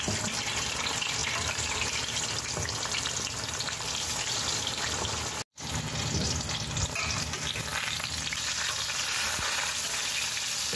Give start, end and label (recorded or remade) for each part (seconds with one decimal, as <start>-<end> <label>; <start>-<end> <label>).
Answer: 0.0-10.8 recorded